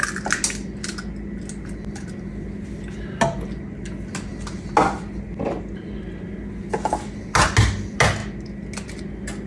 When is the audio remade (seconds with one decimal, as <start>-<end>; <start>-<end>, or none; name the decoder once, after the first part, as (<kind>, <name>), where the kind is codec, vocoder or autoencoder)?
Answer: none